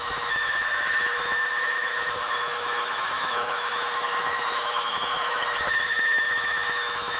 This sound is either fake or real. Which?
fake